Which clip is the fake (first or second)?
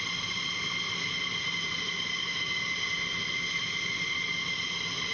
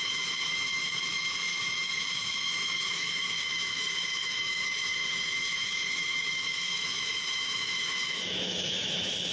second